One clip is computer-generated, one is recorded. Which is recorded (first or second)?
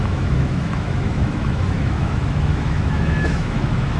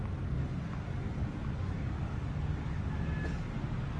second